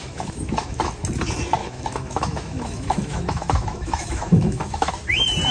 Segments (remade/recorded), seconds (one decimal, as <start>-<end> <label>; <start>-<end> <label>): 0.0-0.9 remade; 0.9-1.6 recorded; 1.6-4.9 remade; 4.9-5.5 recorded